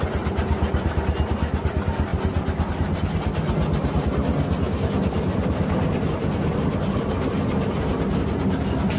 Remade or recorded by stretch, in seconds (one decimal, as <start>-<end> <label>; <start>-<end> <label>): 0.0-9.0 recorded